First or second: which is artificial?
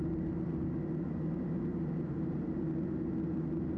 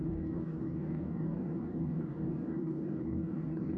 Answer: second